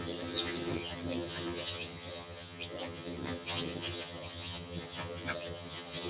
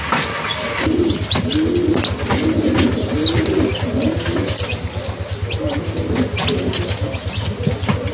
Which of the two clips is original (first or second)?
second